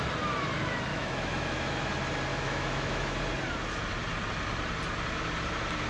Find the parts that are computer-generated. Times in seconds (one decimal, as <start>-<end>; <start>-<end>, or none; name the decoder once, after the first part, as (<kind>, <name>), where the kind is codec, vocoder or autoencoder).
0.9-1.9 (autoencoder, DAC-VAE); 2.3-3.1